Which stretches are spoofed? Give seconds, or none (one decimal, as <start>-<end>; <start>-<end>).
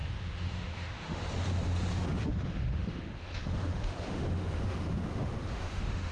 0.0-1.2; 1.9-6.1